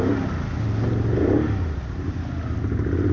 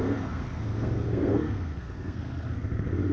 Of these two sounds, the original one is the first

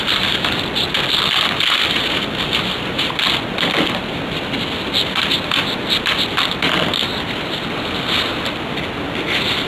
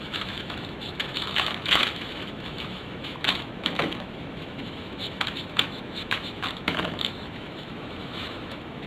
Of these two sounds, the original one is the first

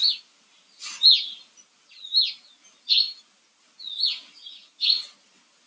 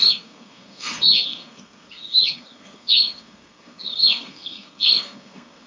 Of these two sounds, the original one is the first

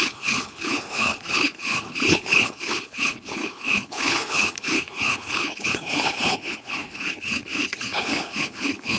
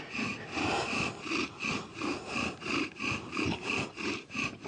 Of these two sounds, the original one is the second